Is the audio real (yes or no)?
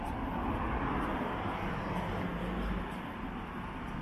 yes